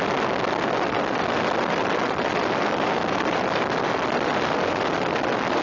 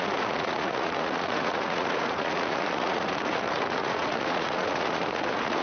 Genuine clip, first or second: first